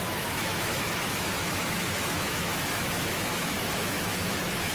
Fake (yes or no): yes